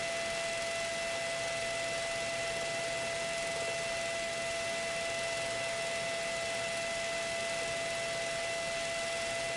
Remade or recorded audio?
recorded